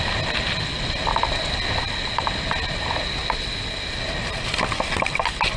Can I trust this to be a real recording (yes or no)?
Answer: yes